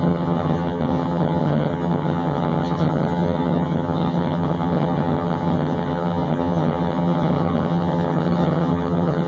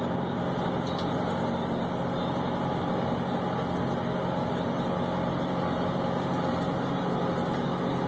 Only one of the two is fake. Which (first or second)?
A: first